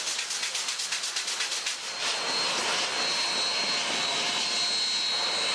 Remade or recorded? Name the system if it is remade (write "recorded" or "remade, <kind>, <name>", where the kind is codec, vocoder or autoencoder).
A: recorded